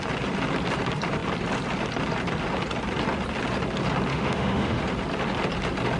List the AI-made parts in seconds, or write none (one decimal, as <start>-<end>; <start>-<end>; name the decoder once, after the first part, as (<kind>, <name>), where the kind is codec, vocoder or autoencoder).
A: 4.1-4.8 (autoencoder, DAC-VAE)